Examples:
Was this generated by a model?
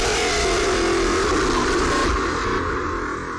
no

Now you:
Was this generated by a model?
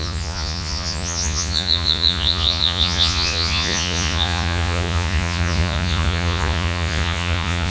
yes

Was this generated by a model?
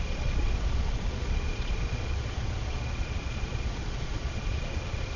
yes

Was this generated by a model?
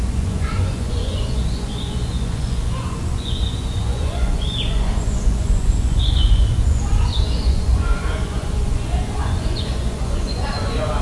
yes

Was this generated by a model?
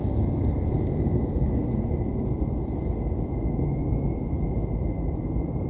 no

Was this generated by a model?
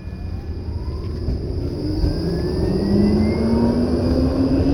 no